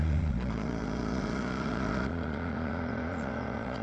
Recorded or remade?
remade